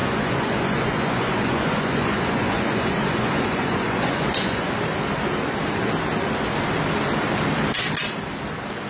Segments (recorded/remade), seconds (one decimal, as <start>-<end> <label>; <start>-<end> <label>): 0.0-4.7 remade; 4.7-8.9 recorded